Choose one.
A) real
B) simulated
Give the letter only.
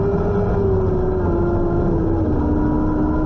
A